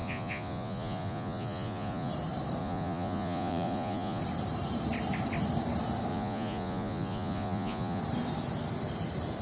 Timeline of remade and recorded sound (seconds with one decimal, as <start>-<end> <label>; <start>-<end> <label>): 0.0-2.1 remade; 2.1-2.6 recorded; 2.6-4.2 remade; 4.2-6.1 recorded; 6.1-8.0 remade; 8.0-9.4 recorded